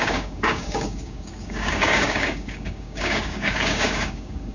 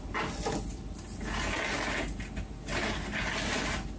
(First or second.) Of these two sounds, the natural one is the second